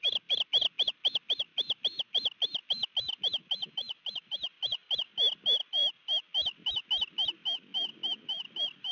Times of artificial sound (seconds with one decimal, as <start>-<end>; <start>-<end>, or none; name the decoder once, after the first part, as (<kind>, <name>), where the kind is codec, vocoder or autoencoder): none